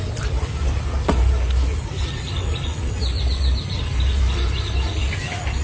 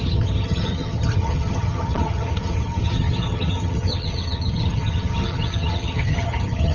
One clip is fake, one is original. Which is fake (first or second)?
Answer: second